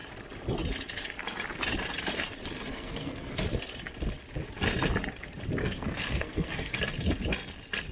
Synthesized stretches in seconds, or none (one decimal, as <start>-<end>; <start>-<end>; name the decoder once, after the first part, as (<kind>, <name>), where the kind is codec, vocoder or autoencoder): 2.7-3.4 (codec, SNAC); 5.6-6.8